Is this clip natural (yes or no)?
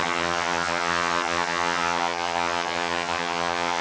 no